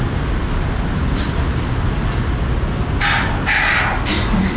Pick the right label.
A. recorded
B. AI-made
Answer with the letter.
A